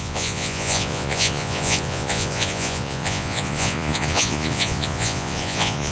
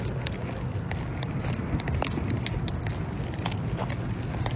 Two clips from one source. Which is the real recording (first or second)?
second